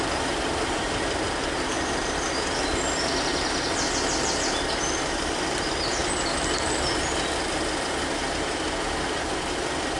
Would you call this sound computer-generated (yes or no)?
yes